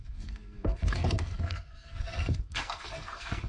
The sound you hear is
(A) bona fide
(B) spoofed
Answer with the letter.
B